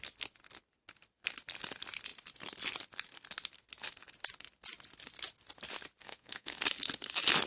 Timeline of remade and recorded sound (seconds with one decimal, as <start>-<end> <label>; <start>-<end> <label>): 0.0-6.0 recorded; 6.0-6.6 remade; 6.6-7.5 recorded